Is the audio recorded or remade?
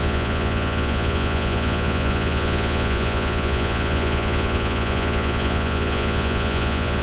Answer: remade